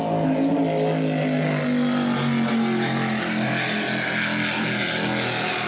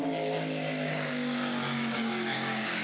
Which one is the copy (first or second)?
second